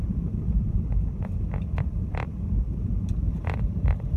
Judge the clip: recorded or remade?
remade